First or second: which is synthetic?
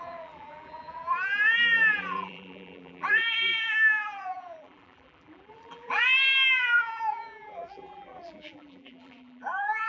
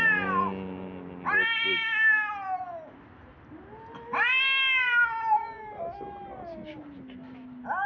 first